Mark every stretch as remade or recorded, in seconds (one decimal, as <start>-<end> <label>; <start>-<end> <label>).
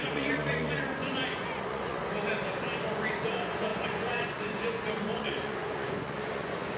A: 0.0-2.0 remade; 2.0-2.9 recorded; 2.9-6.8 remade